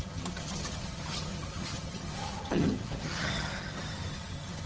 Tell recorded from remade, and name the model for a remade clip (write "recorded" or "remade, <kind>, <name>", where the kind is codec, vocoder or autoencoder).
remade, vocoder, HiFi-GAN